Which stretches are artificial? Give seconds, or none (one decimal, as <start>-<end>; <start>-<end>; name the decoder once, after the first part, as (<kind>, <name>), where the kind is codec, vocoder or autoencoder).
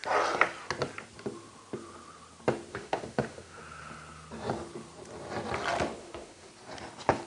2.7-3.6 (autoencoder, DAC-VAE); 6.0-6.5